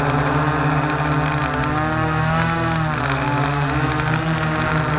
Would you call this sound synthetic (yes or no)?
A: no